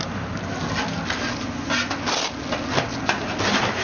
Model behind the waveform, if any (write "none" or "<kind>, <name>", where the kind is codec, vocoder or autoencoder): none